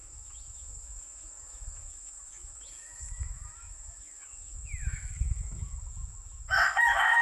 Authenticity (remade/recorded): remade